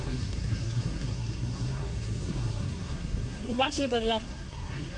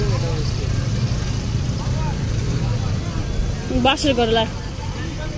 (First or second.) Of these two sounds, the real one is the second